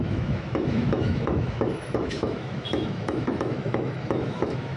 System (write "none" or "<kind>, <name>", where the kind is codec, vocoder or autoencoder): autoencoder, DAC-VAE